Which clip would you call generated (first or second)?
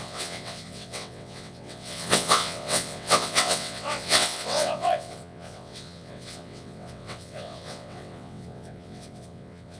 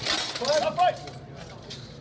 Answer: first